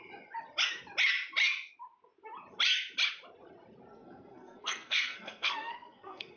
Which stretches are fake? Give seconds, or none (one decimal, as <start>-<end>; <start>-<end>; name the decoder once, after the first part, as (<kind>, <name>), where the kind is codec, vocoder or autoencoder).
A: 3.9-6.4 (codec, SNAC)